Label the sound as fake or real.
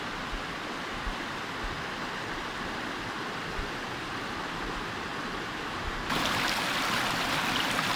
real